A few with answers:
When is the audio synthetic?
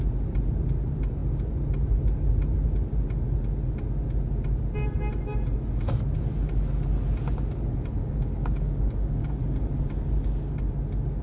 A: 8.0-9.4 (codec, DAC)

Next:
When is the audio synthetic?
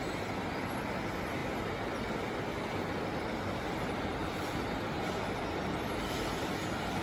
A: 4.2-6.1 (vocoder, BigVGAN v2)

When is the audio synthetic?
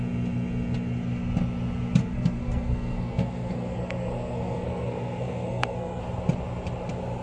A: 2.0-6.0 (codec, SNAC)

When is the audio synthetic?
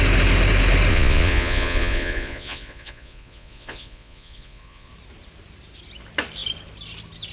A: 0.9-4.9 (vocoder, Vocos)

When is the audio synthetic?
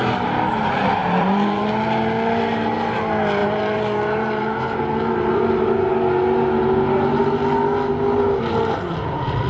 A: 1.0-1.7 (vocoder, BigVGAN v2); 3.4-4.8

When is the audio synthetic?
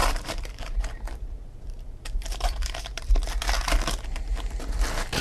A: 0.0-3.1 (vocoder, BigVGAN v2)